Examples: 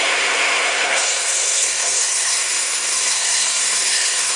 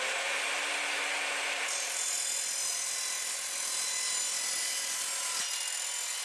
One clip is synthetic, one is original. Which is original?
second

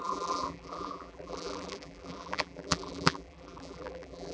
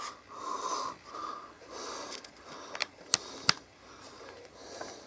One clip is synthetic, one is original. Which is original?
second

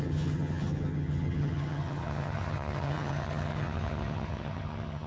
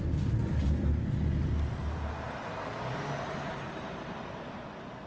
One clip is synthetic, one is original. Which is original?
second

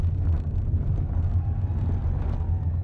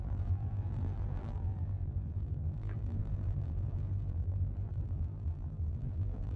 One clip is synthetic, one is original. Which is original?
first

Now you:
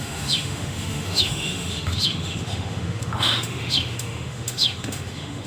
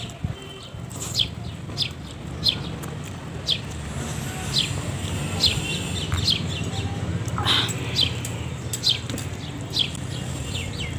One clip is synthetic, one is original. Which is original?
second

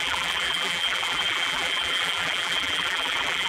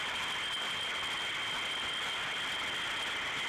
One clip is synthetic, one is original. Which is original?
second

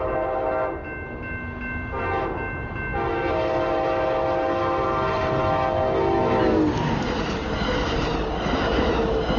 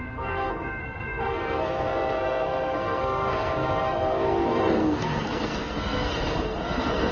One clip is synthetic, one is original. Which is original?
first